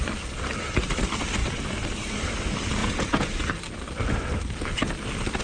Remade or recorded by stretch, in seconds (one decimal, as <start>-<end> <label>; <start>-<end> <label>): 0.0-2.8 recorded; 2.8-3.3 remade; 3.3-5.4 recorded